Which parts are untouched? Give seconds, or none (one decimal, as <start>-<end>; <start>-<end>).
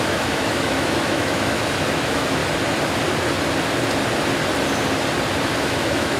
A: 2.4-5.6